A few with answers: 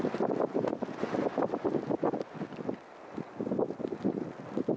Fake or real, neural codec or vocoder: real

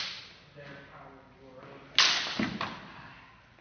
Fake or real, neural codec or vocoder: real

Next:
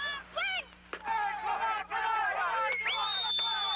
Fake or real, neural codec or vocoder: real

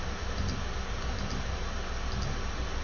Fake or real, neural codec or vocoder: real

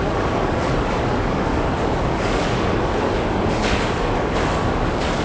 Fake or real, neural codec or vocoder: fake, codec, DAC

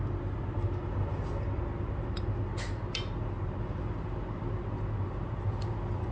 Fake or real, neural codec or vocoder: real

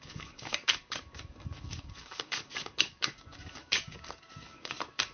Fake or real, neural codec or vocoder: fake, codec, DAC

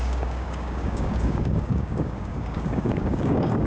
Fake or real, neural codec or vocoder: fake, codec, DAC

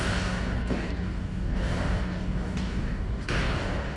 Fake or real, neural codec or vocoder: fake, codec, DAC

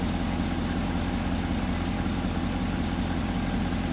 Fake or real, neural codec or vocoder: real